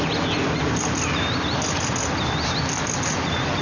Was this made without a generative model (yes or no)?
yes